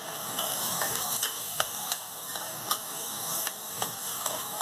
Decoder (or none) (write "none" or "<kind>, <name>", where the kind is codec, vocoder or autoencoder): codec, DAC